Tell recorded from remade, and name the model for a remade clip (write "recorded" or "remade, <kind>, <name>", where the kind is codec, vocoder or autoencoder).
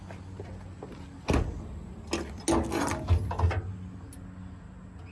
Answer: recorded